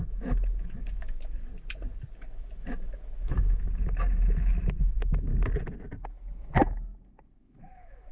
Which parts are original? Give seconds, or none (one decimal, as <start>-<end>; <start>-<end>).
1.4-2.1; 5.3-6.0